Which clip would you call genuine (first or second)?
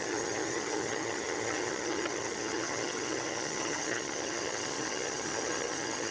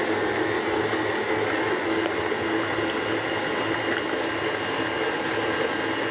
second